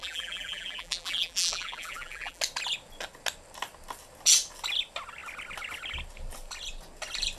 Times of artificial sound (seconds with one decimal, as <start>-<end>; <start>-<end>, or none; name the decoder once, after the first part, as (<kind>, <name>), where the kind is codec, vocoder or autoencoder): 0.0-2.4 (vocoder, BigVGAN v2)